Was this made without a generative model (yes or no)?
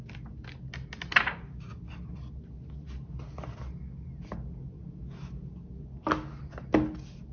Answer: yes